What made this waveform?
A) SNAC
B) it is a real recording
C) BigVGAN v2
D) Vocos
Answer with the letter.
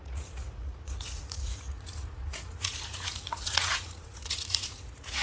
D